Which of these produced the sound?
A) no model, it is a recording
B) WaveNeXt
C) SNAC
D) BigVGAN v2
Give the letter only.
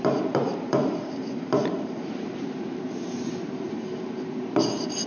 D